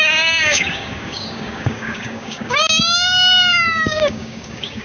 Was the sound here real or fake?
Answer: fake